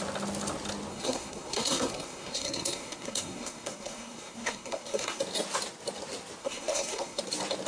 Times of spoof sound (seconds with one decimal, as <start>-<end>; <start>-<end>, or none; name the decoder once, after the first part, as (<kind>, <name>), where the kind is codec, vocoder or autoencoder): 0.9-5.2 (codec, SNAC); 6.4-7.2